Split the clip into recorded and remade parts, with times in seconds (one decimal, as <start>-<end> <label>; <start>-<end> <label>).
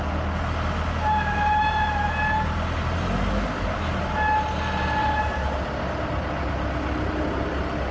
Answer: 0.0-7.9 recorded